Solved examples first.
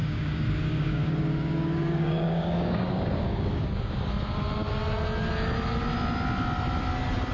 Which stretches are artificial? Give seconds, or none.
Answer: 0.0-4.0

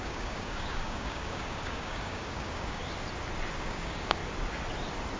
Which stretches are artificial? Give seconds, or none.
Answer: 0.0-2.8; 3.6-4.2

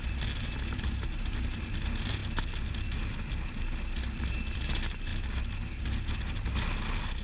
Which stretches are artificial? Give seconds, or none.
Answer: none

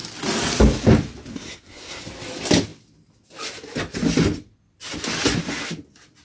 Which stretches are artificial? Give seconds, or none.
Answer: 1.3-2.0

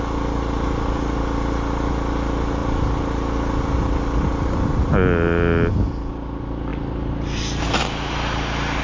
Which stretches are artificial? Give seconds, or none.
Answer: none

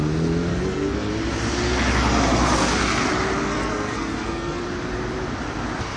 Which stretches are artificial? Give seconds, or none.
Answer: 0.5-1.1; 3.5-4.6

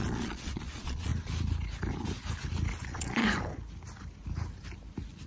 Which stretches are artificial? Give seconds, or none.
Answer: 0.0-1.1; 2.8-3.2